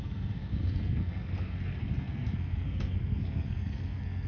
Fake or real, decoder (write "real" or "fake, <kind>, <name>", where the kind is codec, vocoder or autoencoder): fake, codec, SNAC